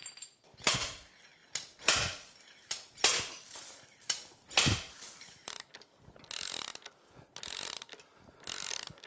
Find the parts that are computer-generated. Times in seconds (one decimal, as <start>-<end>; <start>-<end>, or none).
none